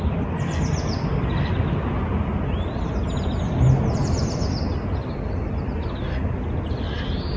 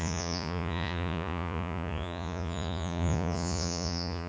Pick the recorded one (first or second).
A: first